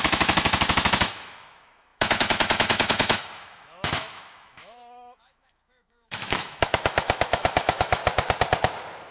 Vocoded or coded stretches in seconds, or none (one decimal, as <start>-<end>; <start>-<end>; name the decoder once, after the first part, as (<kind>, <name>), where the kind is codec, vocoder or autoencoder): 0.0-8.0 (autoencoder, DAC-VAE)